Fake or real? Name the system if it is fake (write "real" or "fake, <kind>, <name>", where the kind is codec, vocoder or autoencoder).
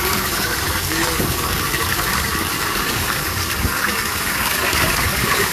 fake, codec, DAC